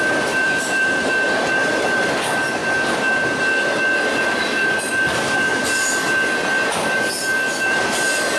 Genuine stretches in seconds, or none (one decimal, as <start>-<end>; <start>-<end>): 2.6-4.2; 5.5-7.6